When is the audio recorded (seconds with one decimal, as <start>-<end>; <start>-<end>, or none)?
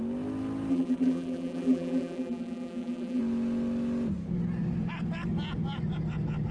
0.0-0.7; 3.2-6.5